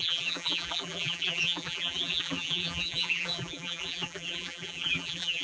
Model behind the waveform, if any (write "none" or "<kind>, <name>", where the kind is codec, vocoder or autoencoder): vocoder, BigVGAN v2